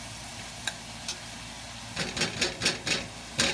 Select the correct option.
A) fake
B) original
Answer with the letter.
B